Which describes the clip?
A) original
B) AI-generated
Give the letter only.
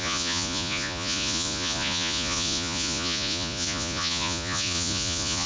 B